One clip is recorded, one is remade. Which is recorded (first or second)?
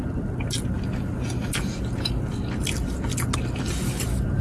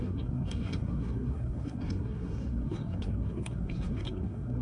first